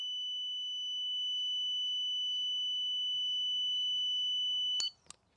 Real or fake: real